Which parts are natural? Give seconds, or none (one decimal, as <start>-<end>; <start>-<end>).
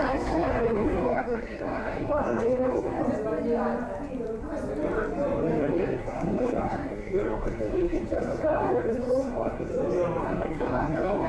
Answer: 3.0-5.6; 9.7-10.2